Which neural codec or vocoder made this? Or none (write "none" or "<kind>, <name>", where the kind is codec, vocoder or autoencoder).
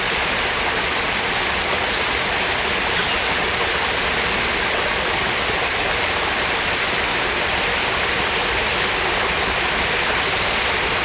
none